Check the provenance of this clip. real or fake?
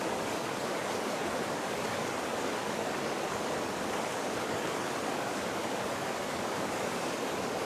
fake